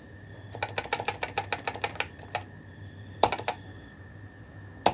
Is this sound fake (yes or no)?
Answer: no